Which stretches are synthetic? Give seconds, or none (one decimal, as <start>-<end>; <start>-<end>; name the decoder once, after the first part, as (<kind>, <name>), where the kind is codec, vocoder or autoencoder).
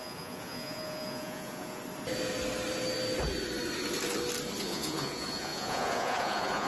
0.0-1.8 (vocoder, Vocos); 4.6-6.7